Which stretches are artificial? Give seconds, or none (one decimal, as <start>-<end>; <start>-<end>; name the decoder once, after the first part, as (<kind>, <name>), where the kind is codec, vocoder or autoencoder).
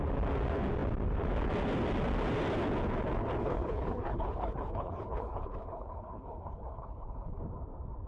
3.4-7.4 (codec, HILCodec)